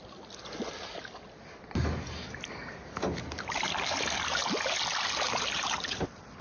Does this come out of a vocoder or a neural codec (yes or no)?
no